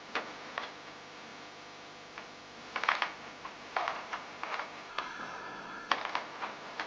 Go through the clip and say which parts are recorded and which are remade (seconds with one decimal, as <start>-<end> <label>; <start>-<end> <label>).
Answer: 0.0-4.9 recorded; 4.9-5.9 remade; 5.9-6.9 recorded